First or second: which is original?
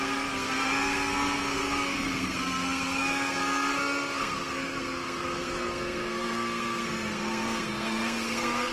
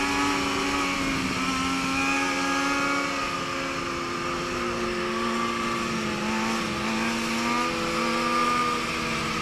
second